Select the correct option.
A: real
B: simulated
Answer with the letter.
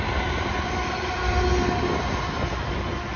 A